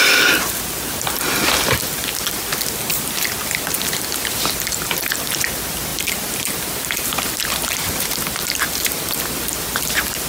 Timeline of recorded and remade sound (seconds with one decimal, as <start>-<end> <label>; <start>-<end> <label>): 0.0-2.5 remade; 2.5-3.0 recorded; 3.0-10.3 remade